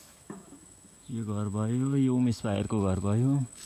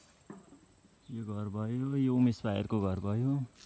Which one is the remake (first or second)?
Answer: first